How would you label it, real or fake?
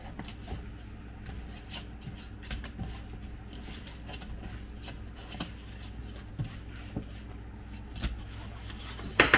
real